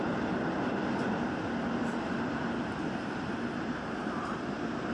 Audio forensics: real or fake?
real